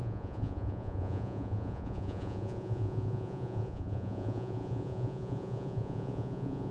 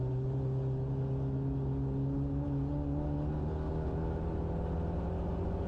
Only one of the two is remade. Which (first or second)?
first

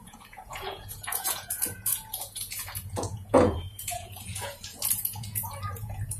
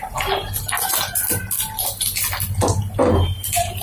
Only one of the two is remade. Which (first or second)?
first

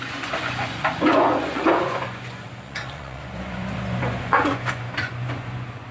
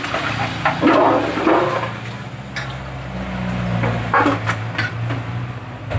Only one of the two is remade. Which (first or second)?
first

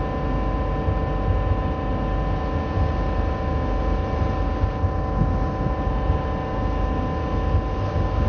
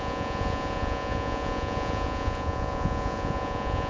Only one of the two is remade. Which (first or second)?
second